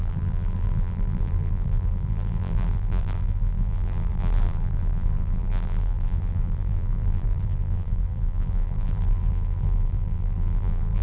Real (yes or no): no